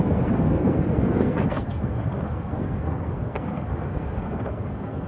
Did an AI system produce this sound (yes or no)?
yes